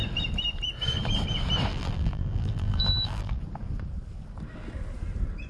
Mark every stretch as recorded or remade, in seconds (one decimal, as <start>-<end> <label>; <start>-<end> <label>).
0.0-1.7 recorded; 1.7-3.4 remade; 3.4-5.5 recorded